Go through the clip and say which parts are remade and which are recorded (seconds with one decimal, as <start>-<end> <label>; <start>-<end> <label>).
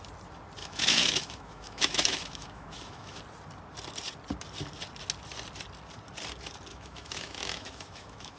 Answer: 0.0-0.6 recorded; 0.6-3.2 remade; 3.2-6.7 recorded; 6.7-8.4 remade